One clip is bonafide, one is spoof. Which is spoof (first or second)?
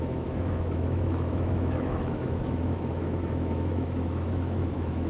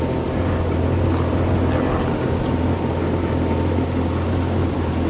first